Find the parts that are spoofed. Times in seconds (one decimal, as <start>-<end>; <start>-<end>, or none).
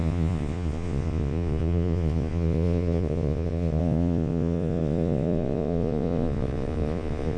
0.0-7.4